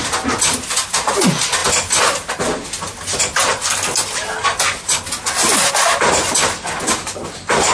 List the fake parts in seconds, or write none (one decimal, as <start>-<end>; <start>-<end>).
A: none